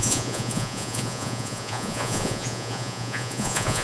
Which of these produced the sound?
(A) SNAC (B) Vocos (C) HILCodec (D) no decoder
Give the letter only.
B